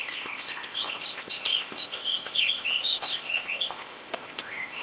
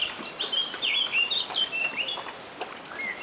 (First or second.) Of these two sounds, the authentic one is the second